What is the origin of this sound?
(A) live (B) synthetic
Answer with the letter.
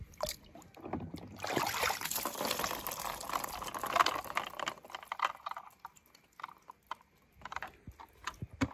A